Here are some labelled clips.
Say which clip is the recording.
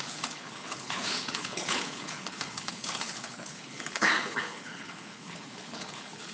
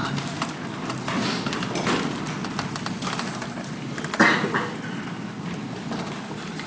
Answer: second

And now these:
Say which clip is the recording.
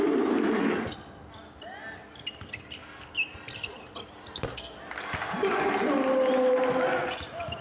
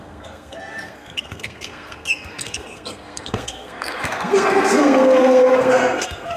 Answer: first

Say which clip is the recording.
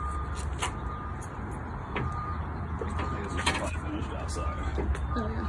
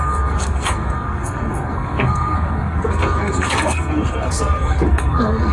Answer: first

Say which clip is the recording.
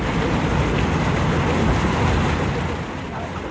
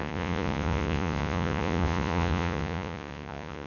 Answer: first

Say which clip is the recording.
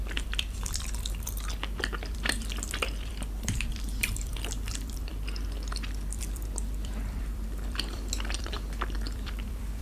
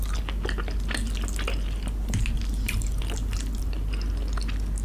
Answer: second